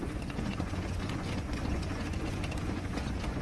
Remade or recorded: remade